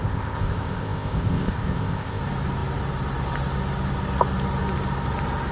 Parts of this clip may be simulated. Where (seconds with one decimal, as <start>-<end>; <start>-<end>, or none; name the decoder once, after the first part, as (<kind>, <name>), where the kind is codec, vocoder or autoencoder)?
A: 0.0-2.2 (codec, ZipCodec)